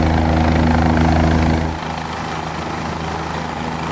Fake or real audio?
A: real